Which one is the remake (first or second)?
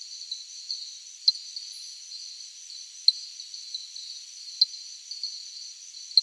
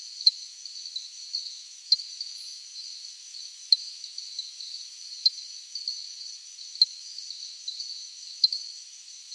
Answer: second